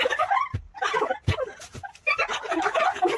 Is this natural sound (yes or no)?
yes